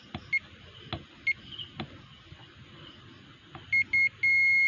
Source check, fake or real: real